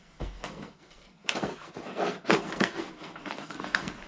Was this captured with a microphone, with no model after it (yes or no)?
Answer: no